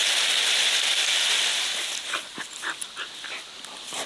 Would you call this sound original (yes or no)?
yes